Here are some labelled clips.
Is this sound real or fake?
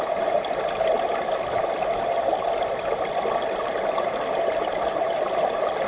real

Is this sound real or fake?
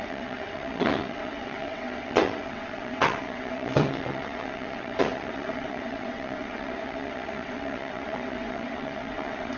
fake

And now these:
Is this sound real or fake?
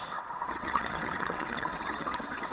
fake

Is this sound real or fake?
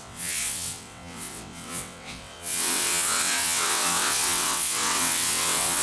fake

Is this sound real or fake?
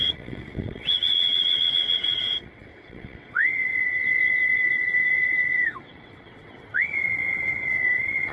fake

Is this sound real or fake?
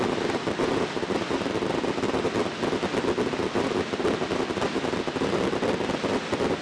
real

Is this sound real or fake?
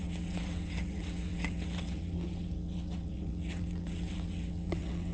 fake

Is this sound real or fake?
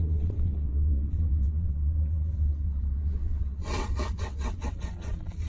fake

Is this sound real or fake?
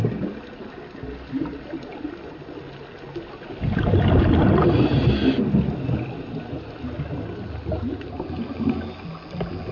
real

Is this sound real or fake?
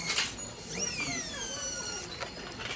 real